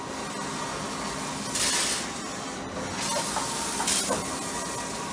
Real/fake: real